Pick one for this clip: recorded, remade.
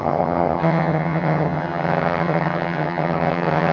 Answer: remade